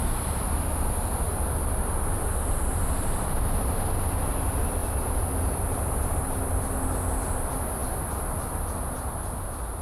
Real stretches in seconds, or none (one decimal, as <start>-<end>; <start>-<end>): 0.0-9.8

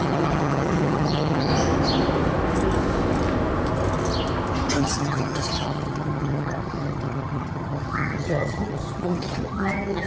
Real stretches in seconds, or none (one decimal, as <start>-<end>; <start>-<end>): 1.5-4.8

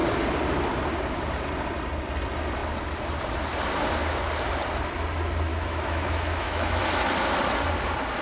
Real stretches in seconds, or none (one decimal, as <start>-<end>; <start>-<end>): 0.0-5.5; 6.8-8.2

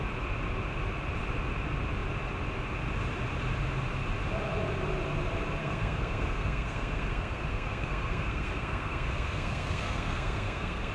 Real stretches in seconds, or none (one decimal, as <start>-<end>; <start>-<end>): 0.0-5.6

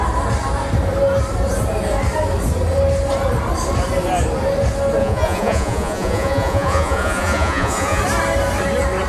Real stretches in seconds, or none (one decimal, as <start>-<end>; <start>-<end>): 0.0-5.0; 8.0-9.1

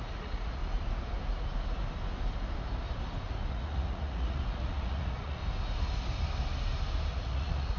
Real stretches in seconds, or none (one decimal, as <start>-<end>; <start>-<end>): 0.6-3.5; 5.4-7.1

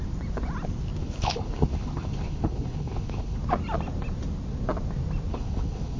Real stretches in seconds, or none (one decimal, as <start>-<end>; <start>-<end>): 0.0-1.0; 3.4-5.3

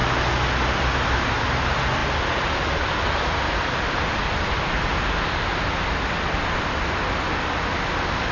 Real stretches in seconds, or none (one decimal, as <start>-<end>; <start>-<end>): 0.0-8.3